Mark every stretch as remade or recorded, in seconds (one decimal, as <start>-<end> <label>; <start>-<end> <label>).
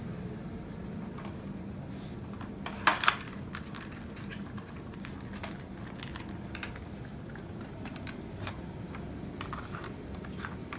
0.0-10.8 recorded